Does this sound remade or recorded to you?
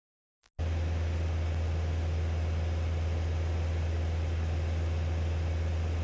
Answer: recorded